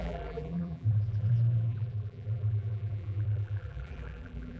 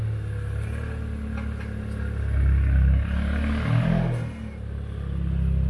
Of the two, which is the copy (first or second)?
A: first